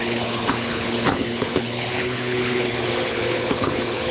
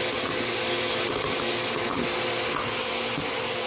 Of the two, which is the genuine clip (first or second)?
second